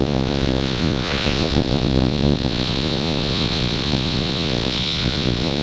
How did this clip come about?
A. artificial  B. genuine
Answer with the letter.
A